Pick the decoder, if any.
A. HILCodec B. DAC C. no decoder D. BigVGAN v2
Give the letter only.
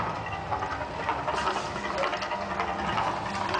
C